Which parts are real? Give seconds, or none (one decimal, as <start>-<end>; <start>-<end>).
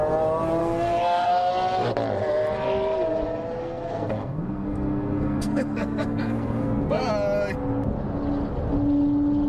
0.0-0.6; 1.5-3.6; 7.1-9.5